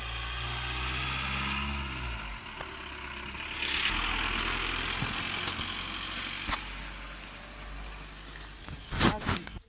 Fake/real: real